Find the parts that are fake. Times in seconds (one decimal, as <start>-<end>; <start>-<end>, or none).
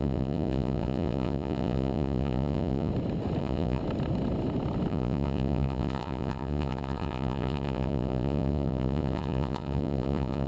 0.0-2.9; 3.4-3.8; 4.9-10.5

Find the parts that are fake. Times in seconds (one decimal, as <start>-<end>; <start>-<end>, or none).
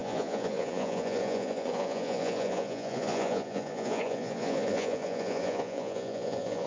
0.0-6.7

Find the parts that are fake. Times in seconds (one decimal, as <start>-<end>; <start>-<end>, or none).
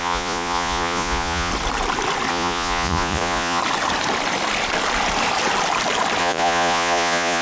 0.0-1.5; 2.3-3.6; 6.2-7.4